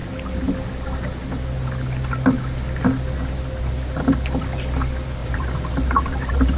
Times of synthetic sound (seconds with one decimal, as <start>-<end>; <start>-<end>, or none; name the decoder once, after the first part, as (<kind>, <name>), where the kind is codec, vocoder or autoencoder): 5.2-6.6 (vocoder, BigVGAN v2)